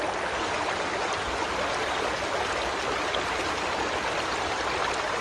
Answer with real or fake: fake